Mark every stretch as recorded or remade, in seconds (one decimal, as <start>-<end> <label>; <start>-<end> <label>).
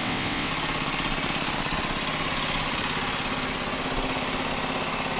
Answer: 0.0-0.5 remade; 0.5-5.2 recorded